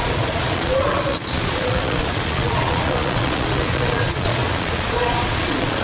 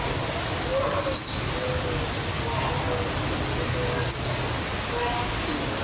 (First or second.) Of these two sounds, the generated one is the first